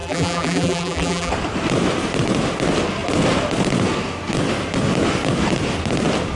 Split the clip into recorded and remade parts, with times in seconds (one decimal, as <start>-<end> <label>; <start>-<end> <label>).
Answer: 0.0-1.3 remade; 1.3-6.4 recorded